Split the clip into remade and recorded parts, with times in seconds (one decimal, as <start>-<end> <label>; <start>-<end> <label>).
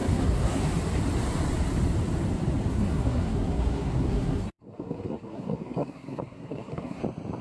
0.0-0.7 remade; 0.7-2.7 recorded; 2.7-7.0 remade; 7.0-7.4 recorded